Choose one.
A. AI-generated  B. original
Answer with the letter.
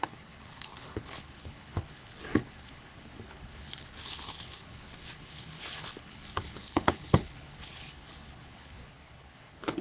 A